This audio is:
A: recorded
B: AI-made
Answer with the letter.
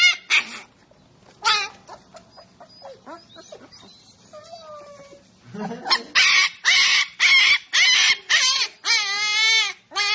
A